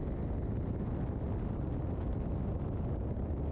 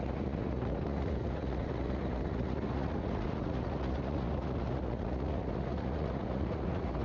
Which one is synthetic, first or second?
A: second